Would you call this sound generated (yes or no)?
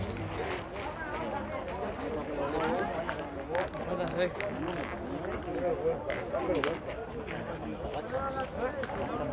no